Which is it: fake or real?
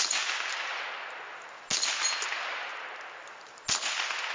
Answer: real